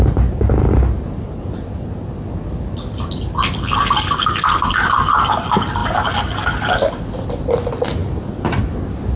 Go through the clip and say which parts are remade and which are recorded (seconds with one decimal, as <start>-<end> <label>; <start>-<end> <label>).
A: 0.0-9.2 recorded